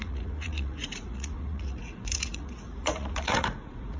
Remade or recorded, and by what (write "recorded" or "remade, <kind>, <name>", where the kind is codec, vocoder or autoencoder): remade, vocoder, Vocos